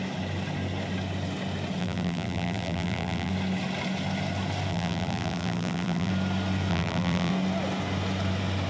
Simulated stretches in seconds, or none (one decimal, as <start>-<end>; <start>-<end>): 1.8-3.3; 4.7-6.1; 6.7-7.3